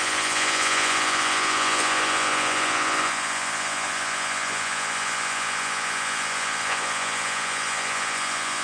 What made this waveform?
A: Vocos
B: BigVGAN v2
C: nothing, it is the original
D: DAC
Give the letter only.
A